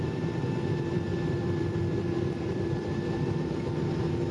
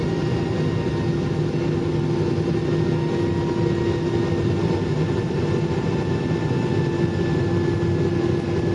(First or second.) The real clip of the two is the second